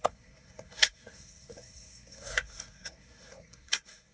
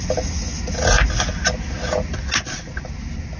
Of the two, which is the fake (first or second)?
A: first